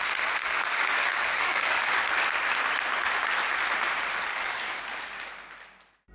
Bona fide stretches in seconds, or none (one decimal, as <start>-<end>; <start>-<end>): 0.0-0.4; 2.0-4.3; 4.8-6.1